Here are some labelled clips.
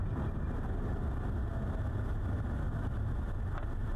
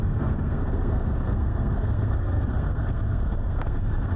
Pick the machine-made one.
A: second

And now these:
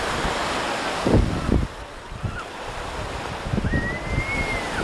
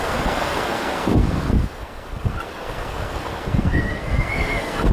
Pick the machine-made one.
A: second